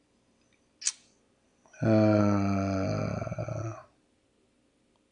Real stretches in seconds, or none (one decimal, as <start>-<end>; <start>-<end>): 0.0-5.1